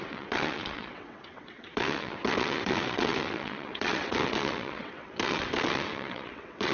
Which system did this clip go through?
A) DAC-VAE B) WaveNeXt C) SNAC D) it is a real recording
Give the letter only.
B